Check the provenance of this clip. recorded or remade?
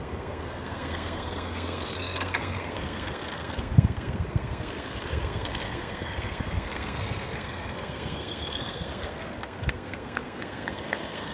remade